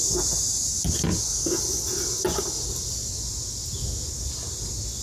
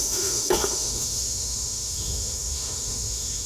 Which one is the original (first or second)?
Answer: first